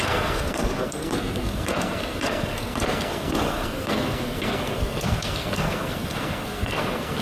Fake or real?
fake